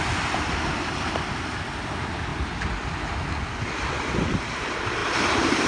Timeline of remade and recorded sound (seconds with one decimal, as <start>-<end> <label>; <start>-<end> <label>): 0.0-5.7 recorded